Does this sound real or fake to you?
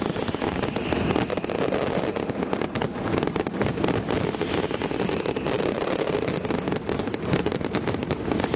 real